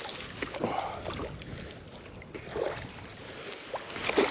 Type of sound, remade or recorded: recorded